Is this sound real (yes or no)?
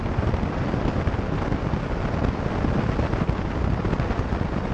yes